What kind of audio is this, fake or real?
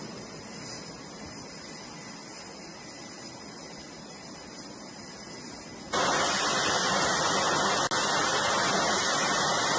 real